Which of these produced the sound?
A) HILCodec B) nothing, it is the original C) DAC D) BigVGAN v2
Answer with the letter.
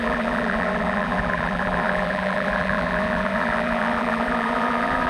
D